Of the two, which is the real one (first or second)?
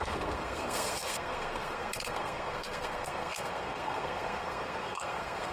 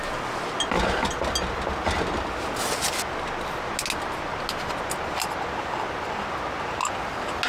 second